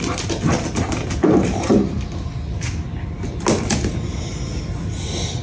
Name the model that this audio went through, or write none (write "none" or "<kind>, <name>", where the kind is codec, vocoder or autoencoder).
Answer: none